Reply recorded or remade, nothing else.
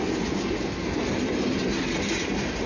recorded